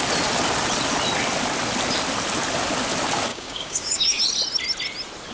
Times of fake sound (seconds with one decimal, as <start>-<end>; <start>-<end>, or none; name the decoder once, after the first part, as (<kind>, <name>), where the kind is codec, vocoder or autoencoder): 3.3-4.2 (codec, DAC)